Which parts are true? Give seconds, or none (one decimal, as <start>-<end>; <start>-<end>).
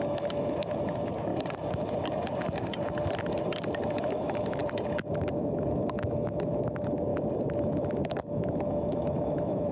1.3-4.0; 4.6-5.1; 7.1-7.6